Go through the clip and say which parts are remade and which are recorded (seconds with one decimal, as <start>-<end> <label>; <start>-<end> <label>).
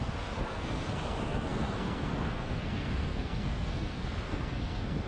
0.0-5.1 remade